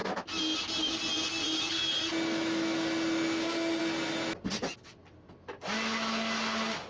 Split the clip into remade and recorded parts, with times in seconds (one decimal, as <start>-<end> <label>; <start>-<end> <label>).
0.0-6.9 recorded